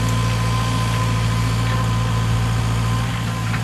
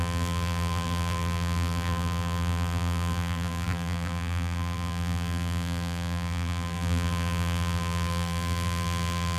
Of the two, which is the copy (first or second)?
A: second